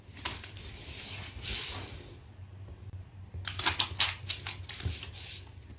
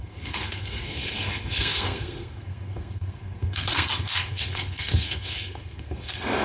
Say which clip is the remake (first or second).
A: second